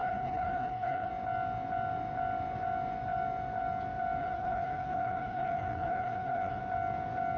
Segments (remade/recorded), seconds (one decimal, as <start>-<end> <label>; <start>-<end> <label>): 0.0-1.1 remade; 1.1-4.2 recorded; 4.2-6.6 remade; 6.6-7.4 recorded